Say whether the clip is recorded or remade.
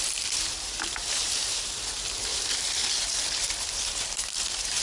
remade